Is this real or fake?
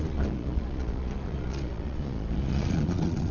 fake